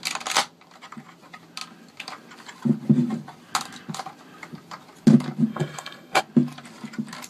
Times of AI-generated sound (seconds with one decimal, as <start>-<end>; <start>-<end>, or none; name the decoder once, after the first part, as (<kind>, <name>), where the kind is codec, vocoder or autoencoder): 5.5-6.2 (codec, SNAC)